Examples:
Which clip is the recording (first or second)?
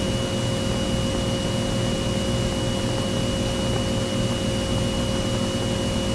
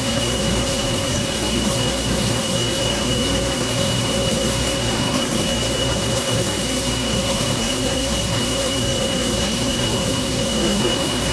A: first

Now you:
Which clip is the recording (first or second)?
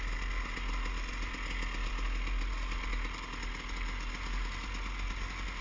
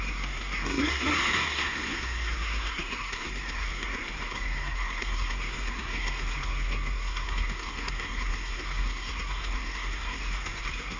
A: first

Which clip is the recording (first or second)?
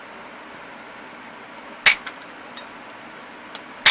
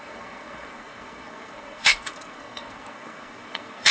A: first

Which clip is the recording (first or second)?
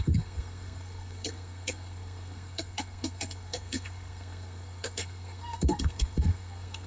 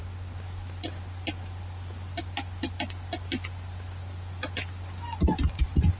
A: second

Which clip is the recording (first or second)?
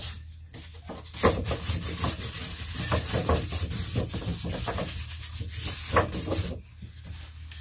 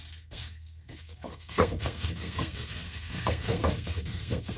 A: first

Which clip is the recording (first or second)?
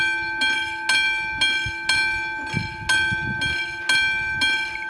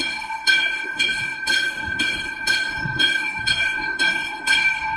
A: first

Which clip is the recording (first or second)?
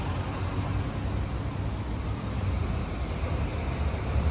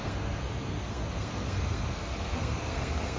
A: first